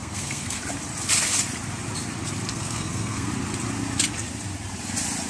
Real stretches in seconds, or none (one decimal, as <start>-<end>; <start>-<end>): 0.6-2.5; 3.3-5.3